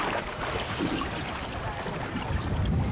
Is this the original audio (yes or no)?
yes